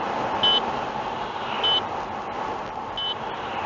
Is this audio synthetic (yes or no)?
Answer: no